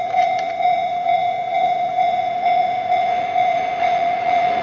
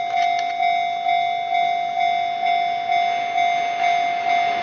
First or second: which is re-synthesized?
first